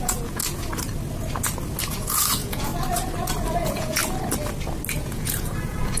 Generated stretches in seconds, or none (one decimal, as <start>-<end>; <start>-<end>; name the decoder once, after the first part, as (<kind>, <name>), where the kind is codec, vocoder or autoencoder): 0.0-0.4 (vocoder, Vocos); 1.9-2.7; 3.5-4.0; 5.0-6.0